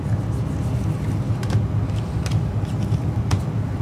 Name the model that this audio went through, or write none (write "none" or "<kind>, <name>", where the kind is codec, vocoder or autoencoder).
none